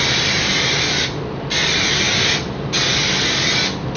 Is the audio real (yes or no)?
yes